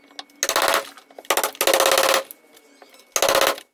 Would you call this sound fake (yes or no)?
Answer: no